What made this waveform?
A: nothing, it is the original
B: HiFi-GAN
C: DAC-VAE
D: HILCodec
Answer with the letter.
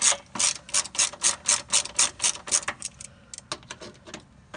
A